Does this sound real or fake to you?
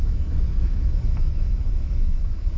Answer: fake